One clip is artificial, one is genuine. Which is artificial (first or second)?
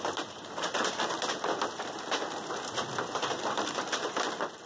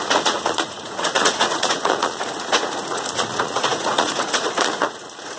second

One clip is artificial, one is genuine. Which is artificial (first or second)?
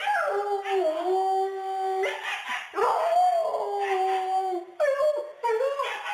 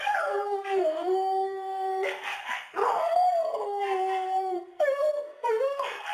second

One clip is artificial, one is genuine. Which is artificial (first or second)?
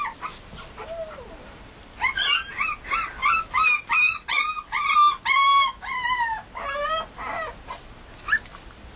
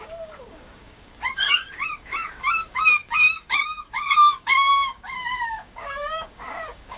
second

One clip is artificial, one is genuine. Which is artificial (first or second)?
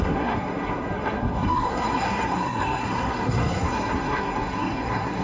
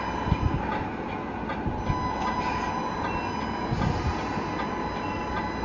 first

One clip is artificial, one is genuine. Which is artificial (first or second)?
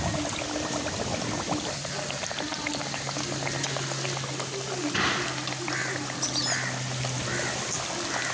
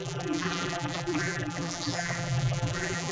second